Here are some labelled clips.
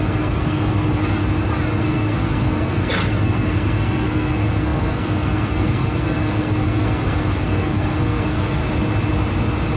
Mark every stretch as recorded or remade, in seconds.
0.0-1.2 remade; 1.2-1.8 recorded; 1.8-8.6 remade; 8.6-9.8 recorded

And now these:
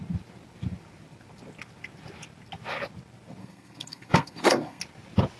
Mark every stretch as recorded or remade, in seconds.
0.0-3.4 recorded; 3.4-4.8 remade; 4.8-5.4 recorded